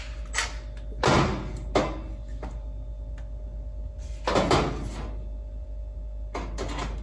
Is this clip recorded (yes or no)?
yes